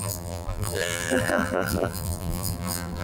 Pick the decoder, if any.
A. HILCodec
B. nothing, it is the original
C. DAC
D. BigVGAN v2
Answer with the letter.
D